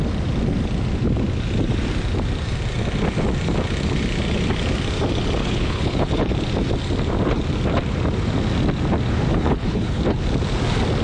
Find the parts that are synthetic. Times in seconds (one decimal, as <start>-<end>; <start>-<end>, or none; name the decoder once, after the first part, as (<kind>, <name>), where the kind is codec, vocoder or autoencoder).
5.4-6.3 (codec, HILCodec); 9.3-10.0